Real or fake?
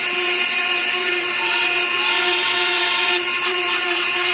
fake